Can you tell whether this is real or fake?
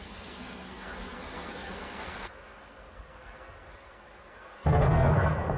fake